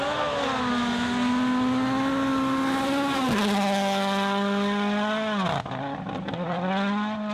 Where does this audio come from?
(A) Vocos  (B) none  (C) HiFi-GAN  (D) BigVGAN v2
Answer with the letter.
B